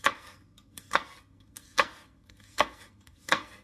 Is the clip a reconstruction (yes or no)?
yes